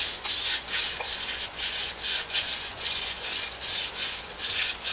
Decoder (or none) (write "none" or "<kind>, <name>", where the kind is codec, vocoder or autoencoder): vocoder, Vocos